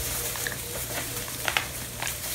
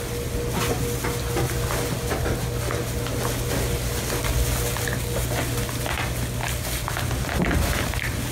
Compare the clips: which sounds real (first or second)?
second